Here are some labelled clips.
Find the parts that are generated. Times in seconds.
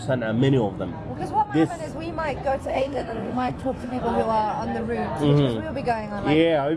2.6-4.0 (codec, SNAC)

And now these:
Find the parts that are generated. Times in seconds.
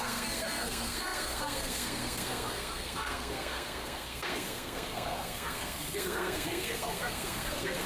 0.0-7.9 (codec, SNAC)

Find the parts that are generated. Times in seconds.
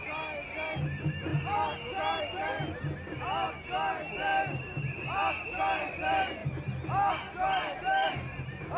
none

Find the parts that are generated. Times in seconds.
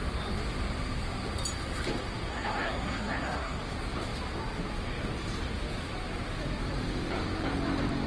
2.3-3.6 (codec, SNAC)